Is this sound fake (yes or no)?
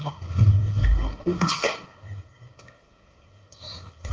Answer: yes